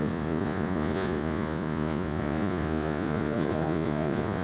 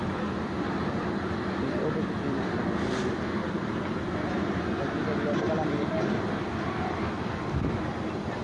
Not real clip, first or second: first